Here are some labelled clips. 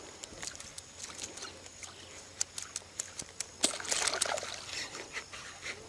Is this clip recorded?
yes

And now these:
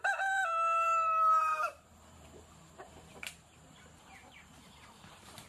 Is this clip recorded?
no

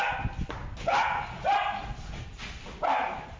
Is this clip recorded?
yes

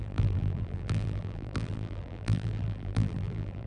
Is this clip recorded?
no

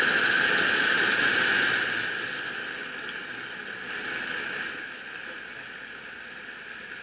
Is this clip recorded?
yes